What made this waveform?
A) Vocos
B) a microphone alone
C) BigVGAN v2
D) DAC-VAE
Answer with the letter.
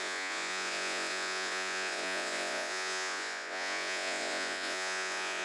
A